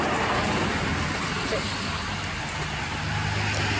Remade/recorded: recorded